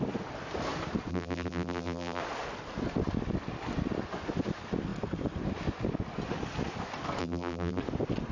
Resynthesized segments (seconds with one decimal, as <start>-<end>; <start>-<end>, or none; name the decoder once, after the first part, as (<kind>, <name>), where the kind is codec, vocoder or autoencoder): 1.1-2.2 (vocoder, BigVGAN v2); 7.2-7.8